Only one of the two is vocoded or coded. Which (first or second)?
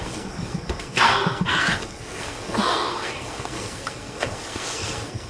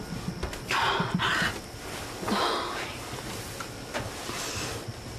first